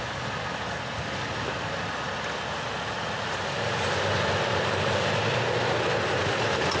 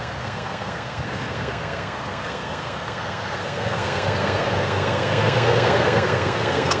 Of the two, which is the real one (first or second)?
first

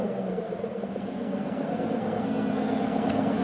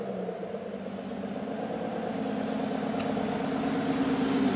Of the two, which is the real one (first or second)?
second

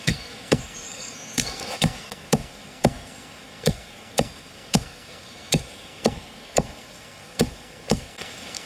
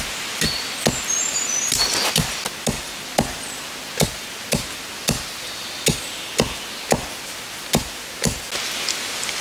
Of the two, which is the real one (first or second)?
second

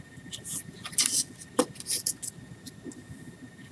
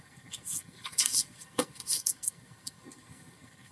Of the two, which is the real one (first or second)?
first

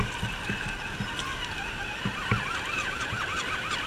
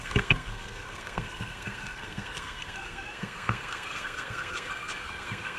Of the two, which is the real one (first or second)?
first